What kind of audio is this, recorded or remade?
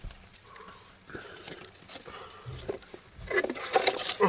recorded